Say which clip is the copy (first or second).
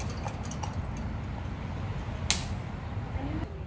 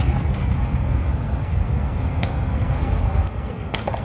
second